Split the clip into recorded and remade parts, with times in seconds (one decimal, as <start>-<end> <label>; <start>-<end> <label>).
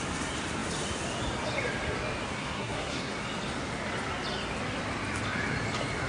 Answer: 0.0-2.4 recorded; 2.4-3.1 remade; 3.1-6.1 recorded